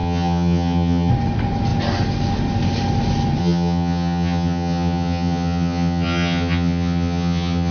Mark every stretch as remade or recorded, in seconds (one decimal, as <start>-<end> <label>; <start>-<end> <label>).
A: 0.0-1.1 remade; 1.1-3.4 recorded; 3.4-7.7 remade